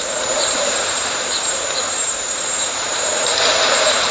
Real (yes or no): no